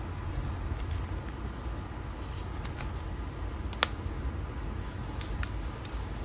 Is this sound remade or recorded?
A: recorded